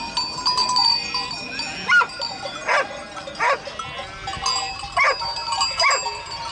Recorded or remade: recorded